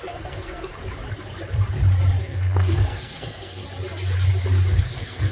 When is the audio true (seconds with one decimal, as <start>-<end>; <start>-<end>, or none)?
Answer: 0.7-2.2; 3.6-4.8